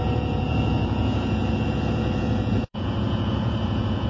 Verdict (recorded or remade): remade